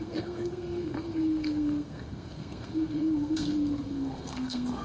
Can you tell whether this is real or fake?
fake